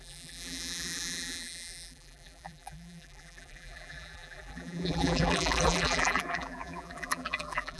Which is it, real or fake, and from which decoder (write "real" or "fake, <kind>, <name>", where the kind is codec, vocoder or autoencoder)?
fake, vocoder, BigVGAN v2